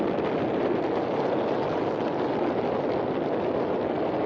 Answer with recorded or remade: recorded